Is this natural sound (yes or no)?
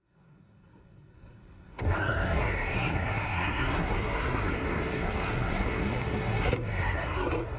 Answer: no